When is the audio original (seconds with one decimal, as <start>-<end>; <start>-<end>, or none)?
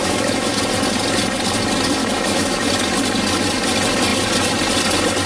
0.6-2.0; 2.7-5.3